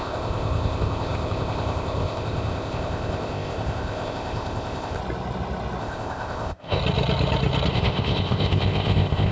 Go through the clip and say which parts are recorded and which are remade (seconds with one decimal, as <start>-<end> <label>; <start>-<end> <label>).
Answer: 0.0-5.0 remade; 5.0-5.8 recorded; 5.8-6.8 remade; 6.8-7.7 recorded; 7.7-9.3 remade